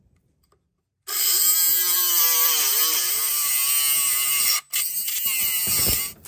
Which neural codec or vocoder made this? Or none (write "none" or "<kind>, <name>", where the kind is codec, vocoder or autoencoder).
none